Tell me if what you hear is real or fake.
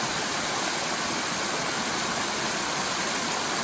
real